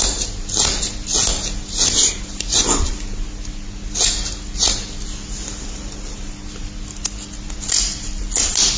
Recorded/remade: recorded